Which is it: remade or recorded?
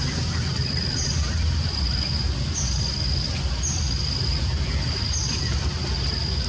recorded